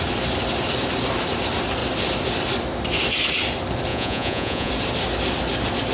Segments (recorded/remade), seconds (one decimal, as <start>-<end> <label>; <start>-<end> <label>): 0.0-3.9 recorded; 3.9-4.7 remade; 4.7-5.9 recorded